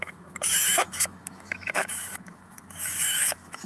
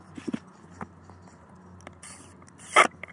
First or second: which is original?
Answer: second